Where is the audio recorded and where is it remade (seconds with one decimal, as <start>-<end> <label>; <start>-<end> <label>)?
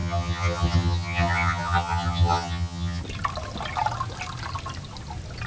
0.0-3.0 remade; 3.0-5.5 recorded